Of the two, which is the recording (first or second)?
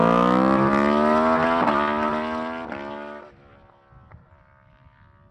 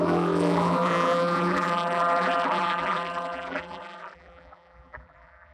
first